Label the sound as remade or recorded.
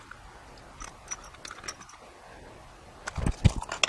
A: recorded